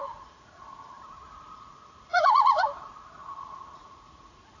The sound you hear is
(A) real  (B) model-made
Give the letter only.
B